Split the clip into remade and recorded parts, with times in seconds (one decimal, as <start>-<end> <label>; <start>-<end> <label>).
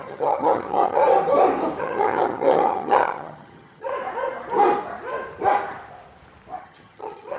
0.0-1.0 remade; 1.0-1.8 recorded; 1.8-3.9 remade; 3.9-6.6 recorded; 6.6-7.4 remade